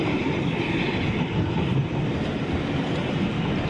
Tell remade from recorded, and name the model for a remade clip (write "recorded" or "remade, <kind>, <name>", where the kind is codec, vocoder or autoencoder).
recorded